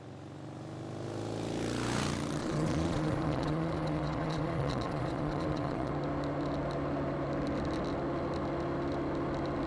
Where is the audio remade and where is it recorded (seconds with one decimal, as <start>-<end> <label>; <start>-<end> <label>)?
0.0-2.4 recorded; 2.4-5.9 remade; 5.9-9.7 recorded